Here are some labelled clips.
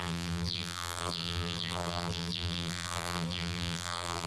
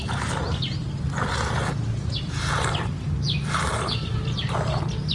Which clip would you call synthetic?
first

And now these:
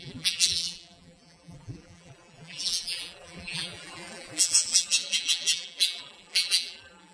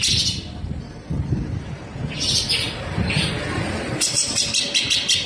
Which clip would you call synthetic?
first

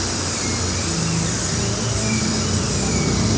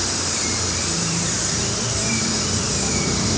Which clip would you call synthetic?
second